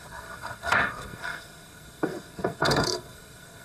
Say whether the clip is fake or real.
fake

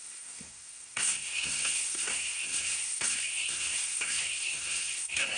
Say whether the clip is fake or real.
fake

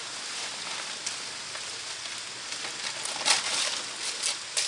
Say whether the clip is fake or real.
real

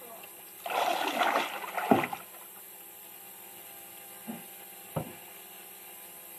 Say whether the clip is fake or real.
real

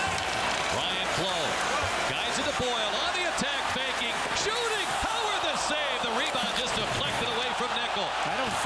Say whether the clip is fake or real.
real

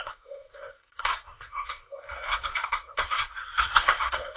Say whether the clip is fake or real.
fake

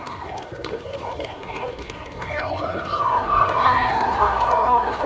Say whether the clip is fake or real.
fake